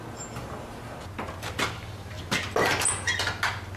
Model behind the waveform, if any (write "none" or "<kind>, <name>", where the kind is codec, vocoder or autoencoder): none